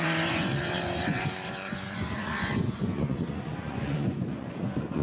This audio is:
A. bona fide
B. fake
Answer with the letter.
B